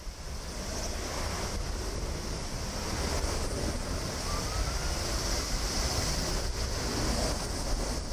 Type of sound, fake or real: real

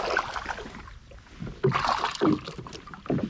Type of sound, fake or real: real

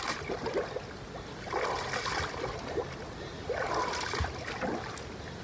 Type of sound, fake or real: real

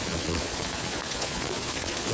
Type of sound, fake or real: fake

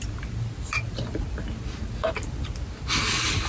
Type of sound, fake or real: real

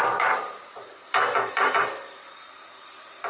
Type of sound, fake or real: real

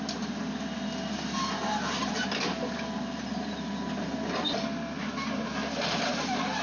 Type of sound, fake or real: real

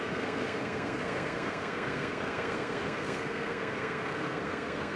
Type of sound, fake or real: fake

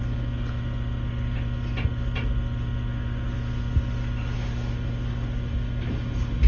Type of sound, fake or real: real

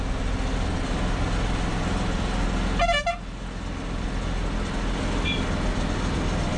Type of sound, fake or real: real